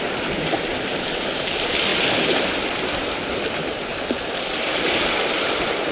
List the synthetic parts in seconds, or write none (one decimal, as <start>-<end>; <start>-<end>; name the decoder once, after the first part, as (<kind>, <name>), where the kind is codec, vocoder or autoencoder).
0.9-1.4 (vocoder, BigVGAN v2); 1.9-2.9